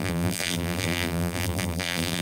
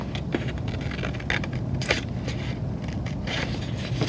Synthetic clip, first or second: first